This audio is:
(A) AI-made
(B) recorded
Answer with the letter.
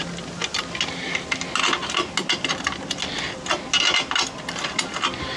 B